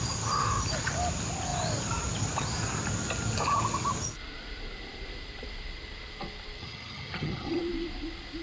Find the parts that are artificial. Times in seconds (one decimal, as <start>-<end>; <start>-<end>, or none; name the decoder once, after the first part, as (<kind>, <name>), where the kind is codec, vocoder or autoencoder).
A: 6.6-7.6 (vocoder, HiFi-GAN)